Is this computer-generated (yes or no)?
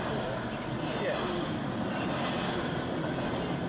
no